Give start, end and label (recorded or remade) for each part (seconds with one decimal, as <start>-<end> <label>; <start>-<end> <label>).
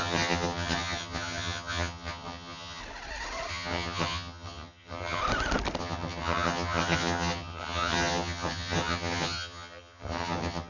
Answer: 0.0-2.8 remade; 2.8-3.5 recorded; 3.5-5.2 remade; 5.2-5.8 recorded; 5.8-10.7 remade